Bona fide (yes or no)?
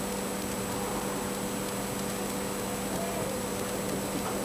yes